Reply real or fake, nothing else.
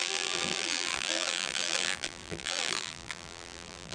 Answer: fake